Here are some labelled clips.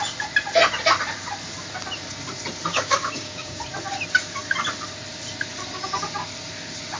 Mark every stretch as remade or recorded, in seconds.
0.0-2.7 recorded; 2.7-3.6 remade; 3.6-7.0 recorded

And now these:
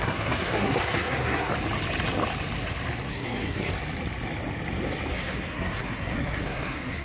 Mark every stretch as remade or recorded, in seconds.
0.0-1.5 remade; 1.5-3.1 recorded; 3.1-3.7 remade; 3.7-5.1 recorded; 5.1-7.0 remade